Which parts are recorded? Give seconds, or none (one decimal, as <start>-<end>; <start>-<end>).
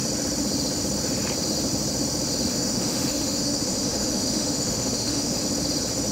0.0-2.5; 5.4-6.1